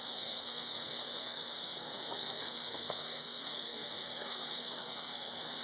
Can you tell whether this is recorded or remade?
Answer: remade